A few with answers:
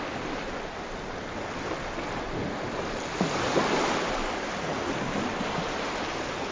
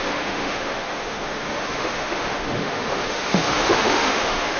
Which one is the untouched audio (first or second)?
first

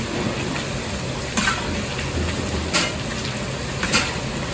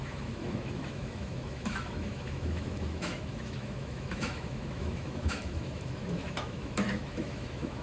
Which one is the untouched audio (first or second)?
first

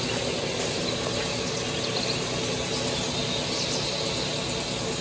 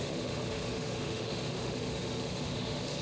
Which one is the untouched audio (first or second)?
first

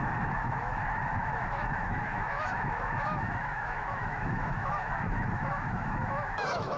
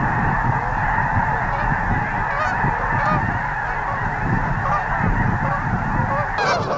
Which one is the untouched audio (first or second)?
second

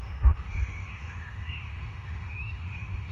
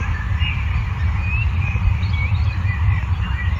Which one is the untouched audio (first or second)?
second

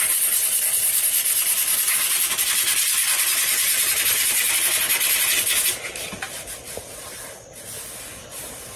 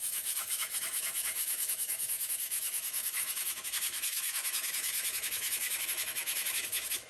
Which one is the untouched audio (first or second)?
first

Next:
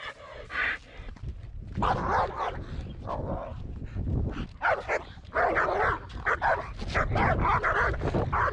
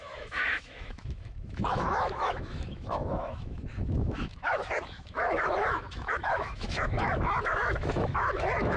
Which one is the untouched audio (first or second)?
first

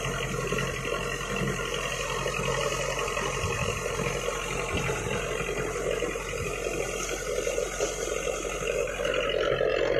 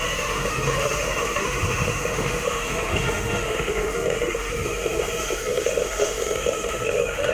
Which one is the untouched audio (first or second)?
first